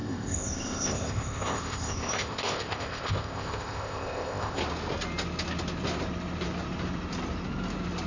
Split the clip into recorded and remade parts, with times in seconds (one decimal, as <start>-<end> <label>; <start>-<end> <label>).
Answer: 0.0-4.6 remade; 4.6-8.1 recorded